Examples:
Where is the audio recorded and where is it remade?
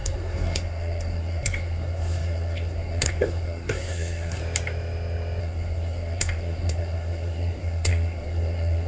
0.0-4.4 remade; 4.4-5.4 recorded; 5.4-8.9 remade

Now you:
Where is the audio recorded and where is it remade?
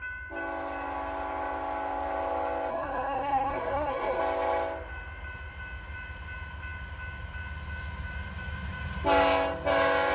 0.0-2.7 recorded; 2.7-4.2 remade; 4.2-10.1 recorded